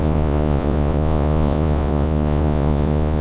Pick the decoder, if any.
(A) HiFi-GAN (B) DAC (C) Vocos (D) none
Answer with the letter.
C